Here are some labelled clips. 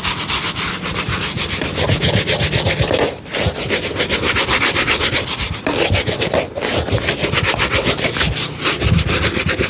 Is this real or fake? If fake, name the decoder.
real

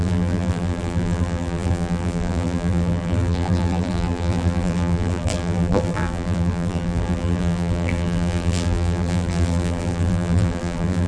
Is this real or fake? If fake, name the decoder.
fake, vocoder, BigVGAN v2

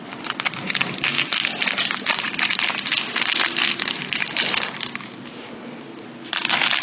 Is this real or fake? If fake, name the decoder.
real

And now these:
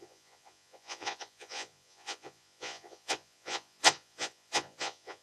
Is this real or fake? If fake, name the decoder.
fake, vocoder, Vocos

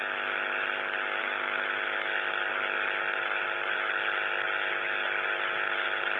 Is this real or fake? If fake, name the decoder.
real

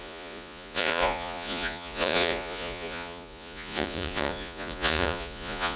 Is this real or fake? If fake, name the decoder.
fake, vocoder, Vocos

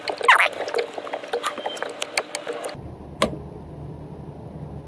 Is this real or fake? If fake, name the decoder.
real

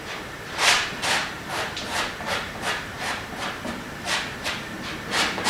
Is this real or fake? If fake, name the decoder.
fake, vocoder, BigVGAN v2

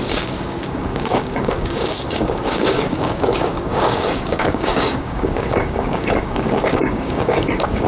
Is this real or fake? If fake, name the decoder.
fake, codec, DAC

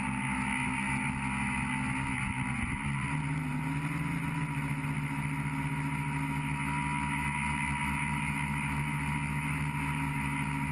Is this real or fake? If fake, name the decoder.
real